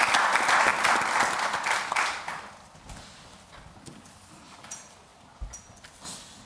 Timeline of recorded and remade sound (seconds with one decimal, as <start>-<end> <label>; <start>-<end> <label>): 0.0-6.5 recorded